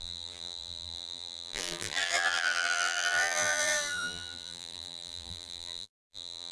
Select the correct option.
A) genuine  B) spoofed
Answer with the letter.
B